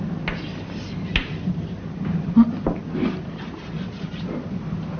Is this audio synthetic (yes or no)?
no